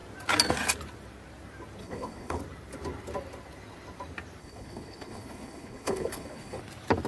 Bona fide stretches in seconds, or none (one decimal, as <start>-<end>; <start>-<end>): 0.0-1.8; 2.4-4.4; 6.6-7.1